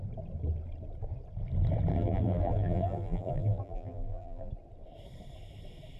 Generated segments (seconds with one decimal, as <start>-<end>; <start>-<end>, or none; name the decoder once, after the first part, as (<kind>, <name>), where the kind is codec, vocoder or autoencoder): 1.9-4.5 (vocoder, BigVGAN v2)